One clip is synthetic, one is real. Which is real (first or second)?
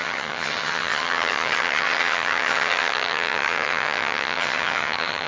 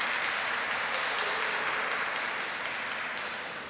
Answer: second